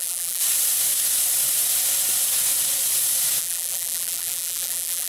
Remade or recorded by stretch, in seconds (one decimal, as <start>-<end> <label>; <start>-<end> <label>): 0.0-0.4 remade; 0.4-3.4 recorded; 3.4-5.1 remade